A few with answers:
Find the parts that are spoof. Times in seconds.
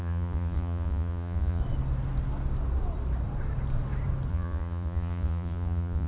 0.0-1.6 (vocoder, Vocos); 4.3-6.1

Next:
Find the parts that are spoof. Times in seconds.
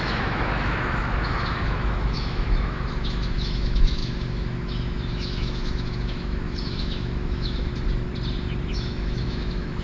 0.0-7.7 (autoencoder, DAC-VAE); 8.7-9.8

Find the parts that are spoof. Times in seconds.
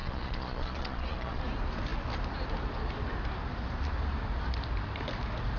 0.0-1.4 (vocoder, Vocos)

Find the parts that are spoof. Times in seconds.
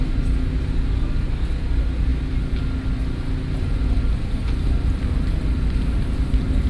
none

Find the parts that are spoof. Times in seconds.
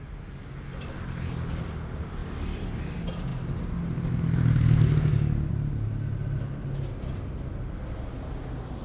none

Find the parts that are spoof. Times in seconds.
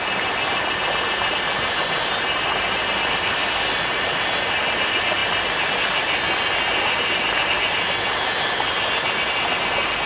none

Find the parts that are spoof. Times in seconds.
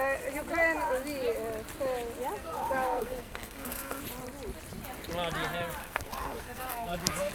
2.4-4.0 (codec, SNAC); 5.8-7.3